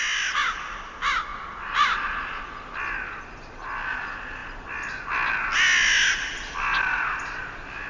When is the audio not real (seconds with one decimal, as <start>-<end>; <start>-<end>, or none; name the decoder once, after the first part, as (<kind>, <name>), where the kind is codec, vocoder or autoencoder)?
none